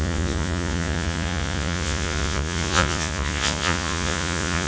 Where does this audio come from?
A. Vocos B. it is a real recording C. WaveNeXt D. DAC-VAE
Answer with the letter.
A